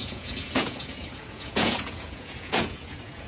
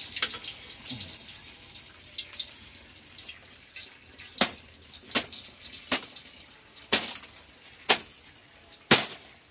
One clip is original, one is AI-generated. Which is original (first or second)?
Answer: second